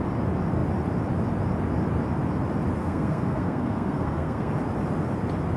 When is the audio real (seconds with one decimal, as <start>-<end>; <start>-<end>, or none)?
0.0-2.8; 4.5-5.6